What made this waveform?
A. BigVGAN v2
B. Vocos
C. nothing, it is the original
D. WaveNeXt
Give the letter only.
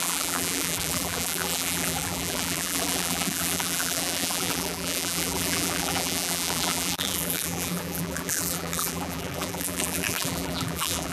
A